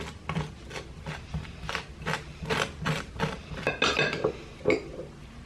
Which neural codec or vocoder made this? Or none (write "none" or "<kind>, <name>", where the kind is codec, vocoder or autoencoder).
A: none